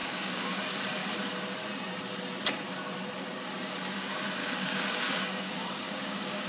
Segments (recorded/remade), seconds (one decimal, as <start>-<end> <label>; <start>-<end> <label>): 0.0-0.6 remade; 0.6-4.4 recorded; 4.4-6.5 remade